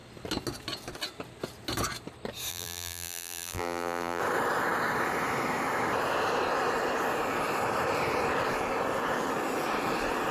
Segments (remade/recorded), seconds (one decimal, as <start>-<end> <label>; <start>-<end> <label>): 0.0-2.5 recorded; 2.5-4.2 remade; 4.2-10.3 recorded